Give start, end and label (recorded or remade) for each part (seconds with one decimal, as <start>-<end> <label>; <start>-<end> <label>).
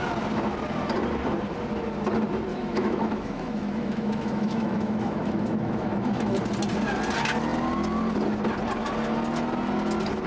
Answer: 0.0-2.5 recorded; 2.5-6.4 remade; 6.4-10.3 recorded